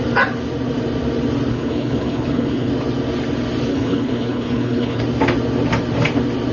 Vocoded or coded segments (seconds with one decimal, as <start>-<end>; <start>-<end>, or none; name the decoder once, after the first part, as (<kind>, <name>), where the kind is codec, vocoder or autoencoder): 1.5-2.7 (codec, HILCodec); 3.7-5.0

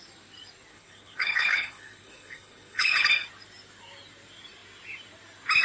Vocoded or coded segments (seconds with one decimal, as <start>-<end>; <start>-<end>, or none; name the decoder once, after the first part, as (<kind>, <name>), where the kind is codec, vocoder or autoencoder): 0.7-3.0 (codec, HILCodec)

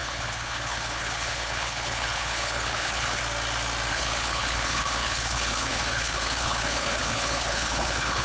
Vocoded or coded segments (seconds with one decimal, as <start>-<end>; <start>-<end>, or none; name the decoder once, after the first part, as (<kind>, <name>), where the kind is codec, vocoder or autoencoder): 0.0-3.2 (codec, HILCodec); 3.9-8.2